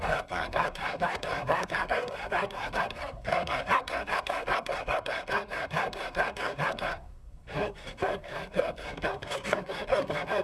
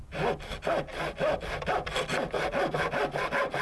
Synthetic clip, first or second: first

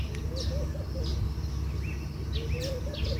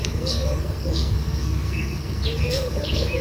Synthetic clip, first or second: second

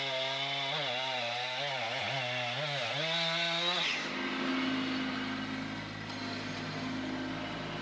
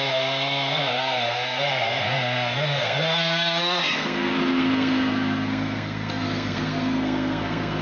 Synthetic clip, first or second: second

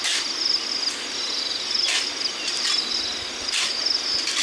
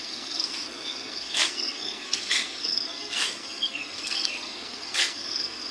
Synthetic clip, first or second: second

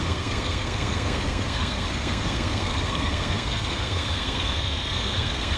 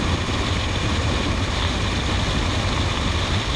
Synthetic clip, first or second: first